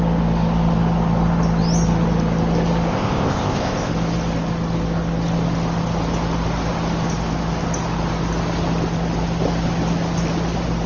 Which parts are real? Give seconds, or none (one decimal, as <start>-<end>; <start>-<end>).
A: 0.0-2.9; 3.9-10.9